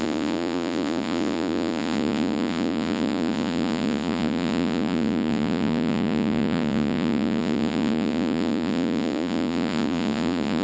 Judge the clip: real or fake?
fake